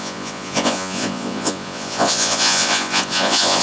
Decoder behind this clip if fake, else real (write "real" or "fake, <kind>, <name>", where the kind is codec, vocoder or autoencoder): fake, vocoder, Vocos